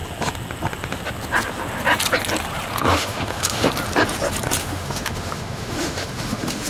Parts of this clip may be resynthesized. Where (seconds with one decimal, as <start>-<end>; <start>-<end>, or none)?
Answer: 2.9-3.7; 4.6-6.7

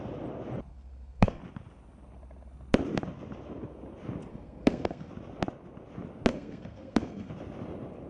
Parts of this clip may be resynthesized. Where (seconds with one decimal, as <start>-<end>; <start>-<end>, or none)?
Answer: 0.7-1.4; 4.3-5.1; 6.3-7.3

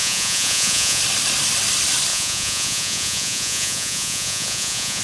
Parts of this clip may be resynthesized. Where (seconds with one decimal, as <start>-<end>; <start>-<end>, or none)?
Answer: 0.0-1.0; 2.1-5.0

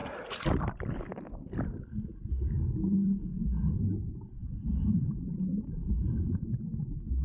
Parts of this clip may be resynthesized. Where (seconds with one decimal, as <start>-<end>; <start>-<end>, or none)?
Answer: 4.4-6.6

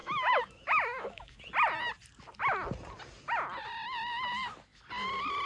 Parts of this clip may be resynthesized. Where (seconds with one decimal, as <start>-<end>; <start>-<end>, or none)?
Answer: 0.0-1.4